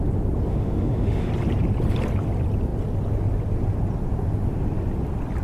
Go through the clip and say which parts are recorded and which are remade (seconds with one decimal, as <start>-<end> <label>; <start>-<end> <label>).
0.0-0.5 recorded; 0.5-1.3 remade; 1.3-5.4 recorded